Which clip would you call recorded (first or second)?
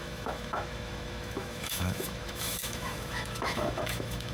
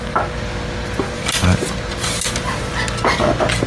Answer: second